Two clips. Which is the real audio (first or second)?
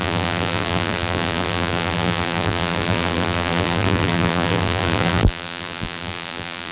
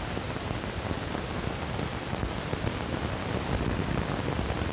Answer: second